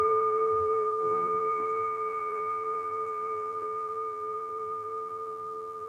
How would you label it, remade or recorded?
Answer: remade